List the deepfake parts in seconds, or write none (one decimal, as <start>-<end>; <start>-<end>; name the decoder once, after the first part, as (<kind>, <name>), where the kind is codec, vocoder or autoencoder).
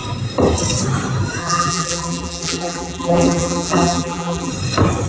1.4-4.5 (vocoder, BigVGAN v2)